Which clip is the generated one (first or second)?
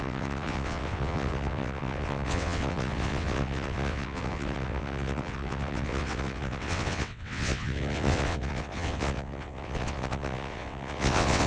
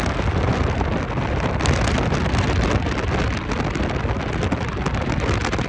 first